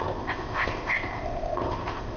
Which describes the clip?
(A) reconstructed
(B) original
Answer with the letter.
A